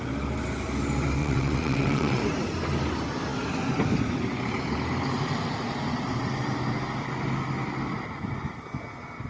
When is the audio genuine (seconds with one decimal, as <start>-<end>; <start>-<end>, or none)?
0.0-1.2; 2.2-9.3